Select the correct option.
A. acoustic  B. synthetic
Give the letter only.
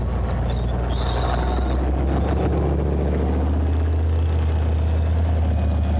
A